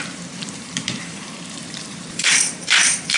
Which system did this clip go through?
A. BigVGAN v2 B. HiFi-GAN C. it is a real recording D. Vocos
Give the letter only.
A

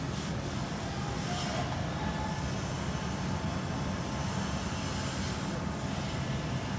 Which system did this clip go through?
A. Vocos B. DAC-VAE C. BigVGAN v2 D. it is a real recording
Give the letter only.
D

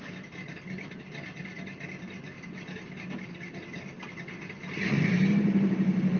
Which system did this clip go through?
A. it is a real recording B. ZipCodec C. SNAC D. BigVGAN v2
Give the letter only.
A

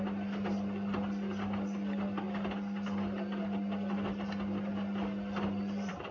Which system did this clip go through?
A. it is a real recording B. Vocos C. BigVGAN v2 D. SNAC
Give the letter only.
A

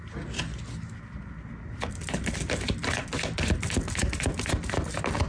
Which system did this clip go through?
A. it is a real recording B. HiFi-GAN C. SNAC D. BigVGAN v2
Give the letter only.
A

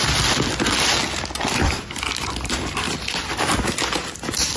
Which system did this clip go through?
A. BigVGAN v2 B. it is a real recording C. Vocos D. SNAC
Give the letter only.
B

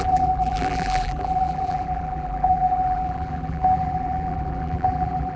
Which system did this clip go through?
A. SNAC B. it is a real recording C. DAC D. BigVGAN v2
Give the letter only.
D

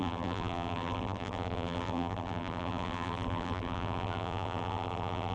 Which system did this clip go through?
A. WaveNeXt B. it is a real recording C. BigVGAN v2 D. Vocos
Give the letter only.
C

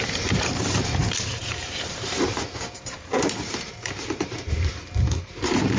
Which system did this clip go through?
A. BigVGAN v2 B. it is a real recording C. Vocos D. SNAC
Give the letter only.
A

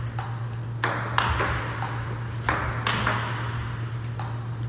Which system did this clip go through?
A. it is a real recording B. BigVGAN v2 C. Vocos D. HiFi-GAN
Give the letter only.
A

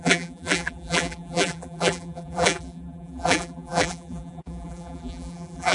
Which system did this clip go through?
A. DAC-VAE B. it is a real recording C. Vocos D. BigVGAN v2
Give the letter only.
D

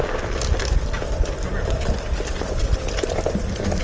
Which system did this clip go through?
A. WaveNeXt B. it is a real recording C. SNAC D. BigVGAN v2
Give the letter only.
D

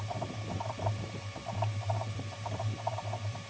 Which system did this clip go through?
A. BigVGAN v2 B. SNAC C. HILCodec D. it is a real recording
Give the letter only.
A